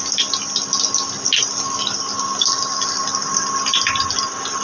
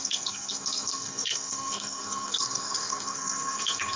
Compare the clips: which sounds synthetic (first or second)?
second